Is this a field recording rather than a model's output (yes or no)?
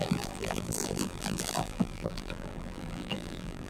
no